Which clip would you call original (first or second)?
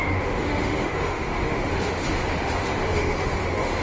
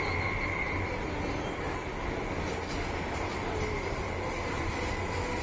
second